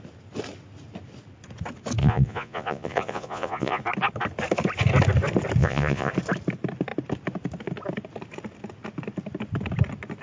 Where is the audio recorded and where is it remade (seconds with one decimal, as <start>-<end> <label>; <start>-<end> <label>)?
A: 0.0-2.0 recorded; 2.0-3.8 remade; 3.8-5.6 recorded; 5.6-6.1 remade; 6.1-10.2 recorded